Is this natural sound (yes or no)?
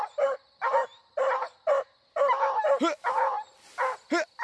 yes